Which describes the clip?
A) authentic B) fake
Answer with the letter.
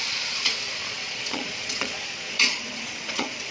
B